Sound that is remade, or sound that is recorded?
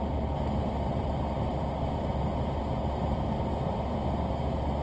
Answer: recorded